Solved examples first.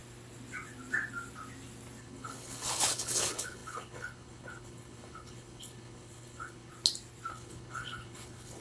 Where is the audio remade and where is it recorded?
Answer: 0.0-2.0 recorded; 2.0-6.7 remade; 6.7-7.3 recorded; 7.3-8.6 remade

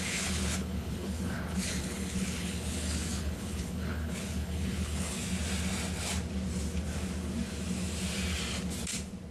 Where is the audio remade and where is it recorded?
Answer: 0.0-5.2 remade; 5.2-9.3 recorded